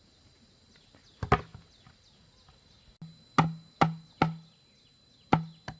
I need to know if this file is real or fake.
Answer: real